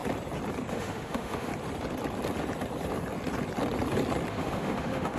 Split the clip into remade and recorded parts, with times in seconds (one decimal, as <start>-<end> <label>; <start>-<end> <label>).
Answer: 0.0-0.7 recorded; 0.7-1.5 remade; 1.5-4.3 recorded; 4.3-5.2 remade